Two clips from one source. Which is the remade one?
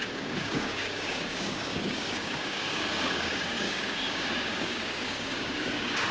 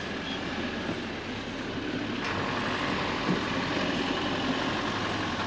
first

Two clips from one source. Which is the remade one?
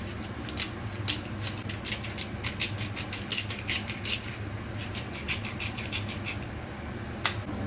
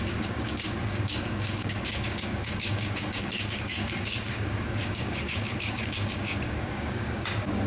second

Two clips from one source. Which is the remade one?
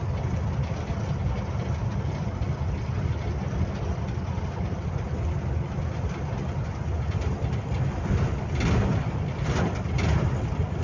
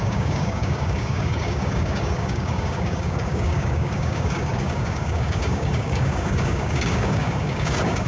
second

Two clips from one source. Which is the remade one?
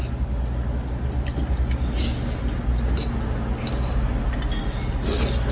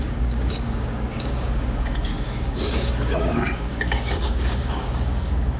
second